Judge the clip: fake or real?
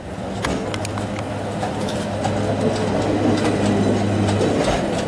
real